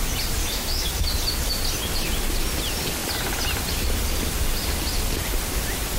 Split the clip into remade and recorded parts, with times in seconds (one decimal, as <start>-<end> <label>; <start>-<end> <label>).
0.0-0.4 recorded; 0.4-0.9 remade; 0.9-6.0 recorded